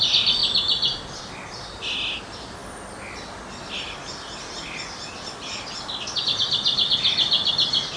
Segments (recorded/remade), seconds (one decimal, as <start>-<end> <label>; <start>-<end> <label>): 0.0-8.0 recorded